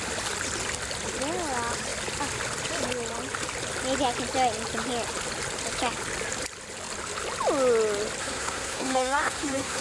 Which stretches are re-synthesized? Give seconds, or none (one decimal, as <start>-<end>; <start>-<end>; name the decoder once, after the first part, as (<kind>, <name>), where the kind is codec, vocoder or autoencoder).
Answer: 8.2-9.8 (codec, SNAC)